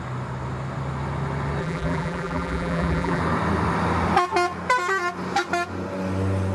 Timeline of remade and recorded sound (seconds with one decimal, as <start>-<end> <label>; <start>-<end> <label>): 0.0-1.6 recorded; 1.6-3.2 remade; 3.2-6.5 recorded